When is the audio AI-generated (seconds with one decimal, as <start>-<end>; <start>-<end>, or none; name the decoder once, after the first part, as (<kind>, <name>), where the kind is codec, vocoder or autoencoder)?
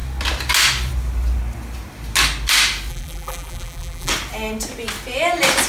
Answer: 2.9-4.1 (vocoder, BigVGAN v2)